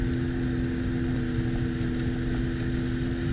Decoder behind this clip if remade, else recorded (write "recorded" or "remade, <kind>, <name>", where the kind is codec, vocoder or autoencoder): recorded